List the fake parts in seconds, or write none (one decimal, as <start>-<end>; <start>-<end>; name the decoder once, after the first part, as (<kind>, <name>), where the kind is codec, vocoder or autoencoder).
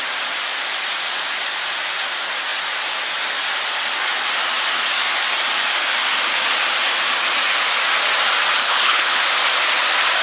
8.6-9.2 (codec, HILCodec)